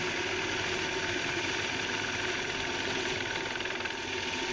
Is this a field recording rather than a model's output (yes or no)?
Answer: yes